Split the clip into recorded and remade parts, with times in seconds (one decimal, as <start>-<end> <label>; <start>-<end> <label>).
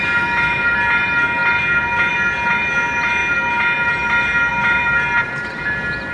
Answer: 0.0-4.5 recorded; 4.5-5.6 remade; 5.6-6.1 recorded